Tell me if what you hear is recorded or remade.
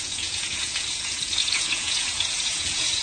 remade